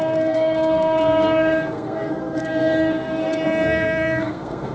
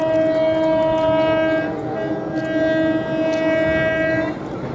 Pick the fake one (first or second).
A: first